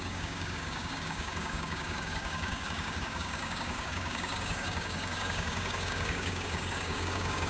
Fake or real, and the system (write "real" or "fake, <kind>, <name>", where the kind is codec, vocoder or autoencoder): fake, codec, DAC